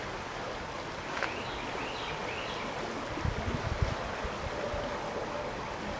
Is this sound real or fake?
real